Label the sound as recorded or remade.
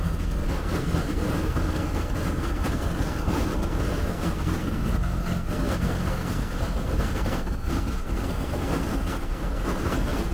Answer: remade